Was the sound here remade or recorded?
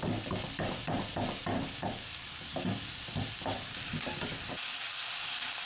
recorded